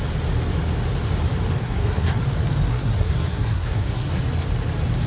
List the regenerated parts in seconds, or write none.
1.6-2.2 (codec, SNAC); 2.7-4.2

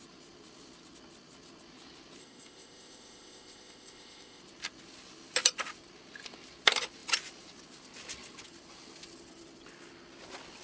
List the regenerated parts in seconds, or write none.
2.2-4.4 (codec, ZipCodec)

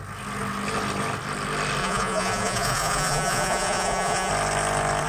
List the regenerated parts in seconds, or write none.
1.8-4.3 (vocoder, Vocos)

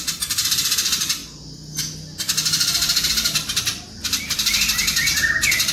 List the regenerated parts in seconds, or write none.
0.0-1.2 (vocoder, BigVGAN v2); 3.1-5.7